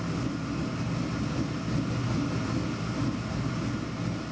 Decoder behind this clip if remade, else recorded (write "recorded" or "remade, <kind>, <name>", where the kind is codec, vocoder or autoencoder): recorded